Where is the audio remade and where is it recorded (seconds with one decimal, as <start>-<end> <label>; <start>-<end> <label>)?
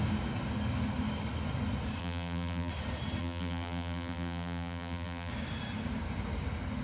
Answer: 0.0-2.0 recorded; 2.0-2.7 remade; 2.7-3.2 recorded; 3.2-5.3 remade; 5.3-6.8 recorded